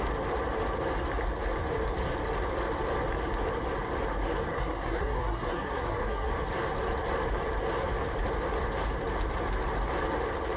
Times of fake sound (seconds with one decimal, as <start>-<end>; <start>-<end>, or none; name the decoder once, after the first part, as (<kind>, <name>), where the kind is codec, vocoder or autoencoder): 4.5-6.3 (codec, SNAC)